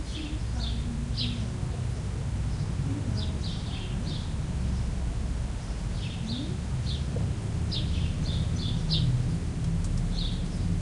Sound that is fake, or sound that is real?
real